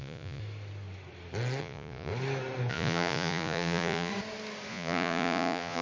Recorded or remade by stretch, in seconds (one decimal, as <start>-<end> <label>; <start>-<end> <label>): 0.0-0.4 remade; 0.4-1.6 recorded; 1.6-2.1 remade; 2.1-2.7 recorded; 2.7-4.1 remade; 4.1-4.7 recorded; 4.7-5.8 remade